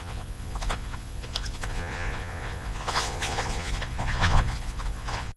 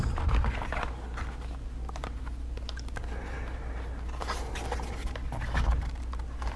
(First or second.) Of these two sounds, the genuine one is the second